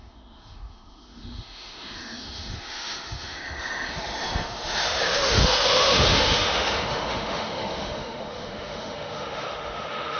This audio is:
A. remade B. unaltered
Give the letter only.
A